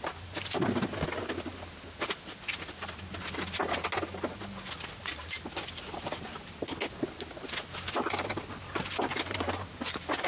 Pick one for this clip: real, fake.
real